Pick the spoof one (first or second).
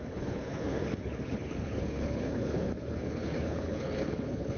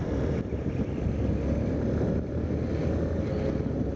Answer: first